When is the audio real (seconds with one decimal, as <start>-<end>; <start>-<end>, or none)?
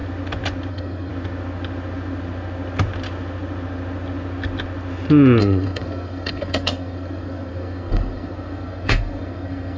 0.0-0.7; 1.1-5.4